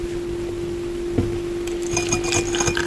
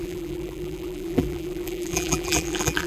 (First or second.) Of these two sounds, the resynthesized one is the second